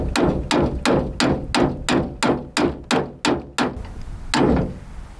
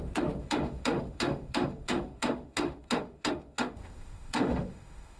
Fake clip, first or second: second